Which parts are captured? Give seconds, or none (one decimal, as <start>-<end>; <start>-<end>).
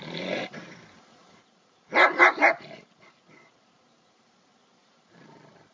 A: none